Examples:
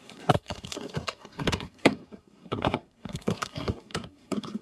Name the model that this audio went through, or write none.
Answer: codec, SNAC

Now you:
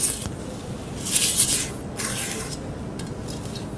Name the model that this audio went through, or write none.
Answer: none